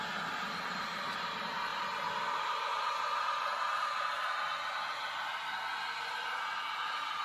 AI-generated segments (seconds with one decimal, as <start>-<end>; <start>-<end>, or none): none